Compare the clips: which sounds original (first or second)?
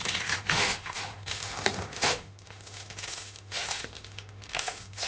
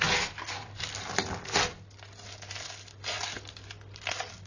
second